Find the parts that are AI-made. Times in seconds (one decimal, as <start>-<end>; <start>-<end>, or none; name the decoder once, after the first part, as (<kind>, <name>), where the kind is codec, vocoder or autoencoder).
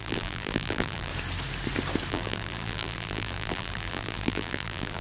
0.0-1.1 (vocoder, BigVGAN v2); 2.1-5.0